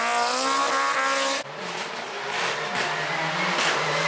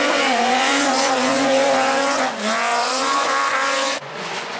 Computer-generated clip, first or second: second